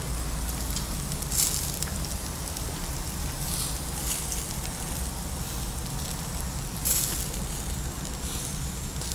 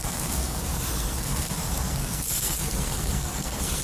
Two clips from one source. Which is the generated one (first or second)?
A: second